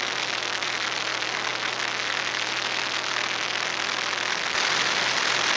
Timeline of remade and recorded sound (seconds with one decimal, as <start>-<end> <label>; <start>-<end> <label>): 0.0-5.6 recorded